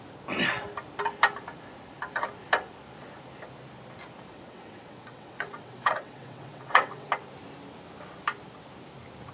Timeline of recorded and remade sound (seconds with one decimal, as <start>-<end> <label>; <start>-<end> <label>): 0.0-4.3 recorded; 4.3-7.1 remade; 7.1-9.3 recorded